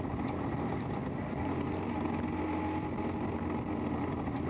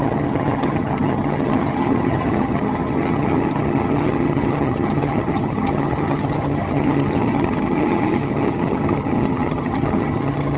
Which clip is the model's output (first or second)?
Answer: second